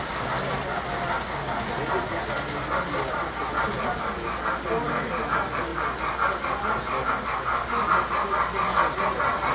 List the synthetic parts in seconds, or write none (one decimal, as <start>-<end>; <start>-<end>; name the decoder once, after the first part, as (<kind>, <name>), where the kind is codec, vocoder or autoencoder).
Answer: none